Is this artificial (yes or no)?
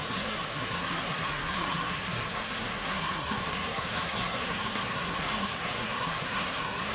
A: yes